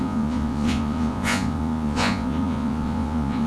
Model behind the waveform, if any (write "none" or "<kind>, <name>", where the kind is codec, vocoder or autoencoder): vocoder, Vocos